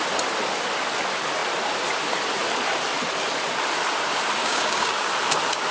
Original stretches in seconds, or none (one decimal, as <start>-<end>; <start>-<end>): 0.0-4.4; 5.1-5.7